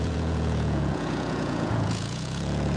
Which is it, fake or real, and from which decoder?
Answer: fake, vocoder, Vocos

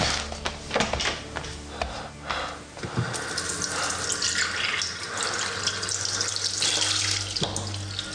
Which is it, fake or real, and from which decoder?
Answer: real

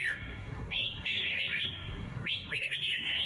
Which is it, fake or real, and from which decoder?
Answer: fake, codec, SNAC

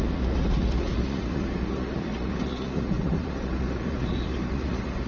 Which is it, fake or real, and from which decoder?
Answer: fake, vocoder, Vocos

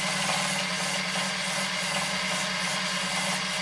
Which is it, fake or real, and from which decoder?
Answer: real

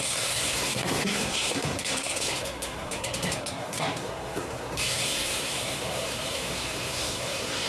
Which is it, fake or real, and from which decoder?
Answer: fake, codec, SNAC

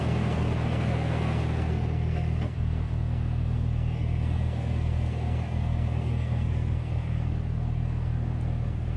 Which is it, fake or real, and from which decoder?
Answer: fake, codec, SNAC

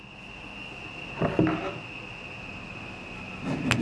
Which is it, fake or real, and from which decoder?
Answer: real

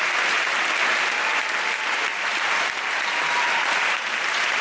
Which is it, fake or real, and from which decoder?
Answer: real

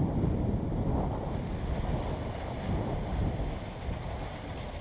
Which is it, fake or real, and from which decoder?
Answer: real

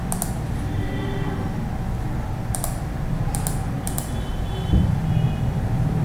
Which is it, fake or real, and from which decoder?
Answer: real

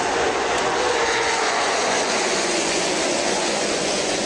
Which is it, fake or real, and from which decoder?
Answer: fake, vocoder, Vocos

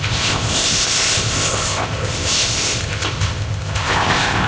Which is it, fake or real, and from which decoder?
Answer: fake, codec, ZipCodec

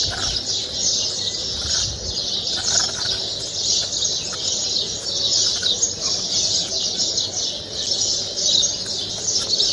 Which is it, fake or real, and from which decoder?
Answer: real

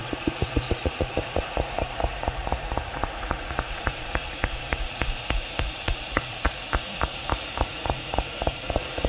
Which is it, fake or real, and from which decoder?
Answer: fake, vocoder, Vocos